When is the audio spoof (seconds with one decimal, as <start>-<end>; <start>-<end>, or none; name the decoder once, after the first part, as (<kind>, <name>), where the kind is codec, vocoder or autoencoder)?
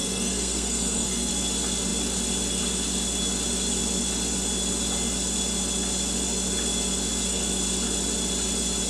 0.0-1.3 (codec, SNAC)